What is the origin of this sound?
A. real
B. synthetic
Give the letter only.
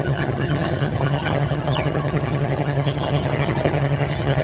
B